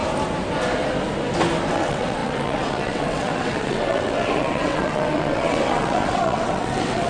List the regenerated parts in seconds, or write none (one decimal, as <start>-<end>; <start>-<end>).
1.7-7.1